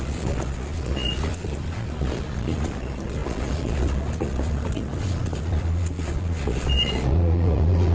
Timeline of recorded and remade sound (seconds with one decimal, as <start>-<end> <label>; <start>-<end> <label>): 0.0-7.9 remade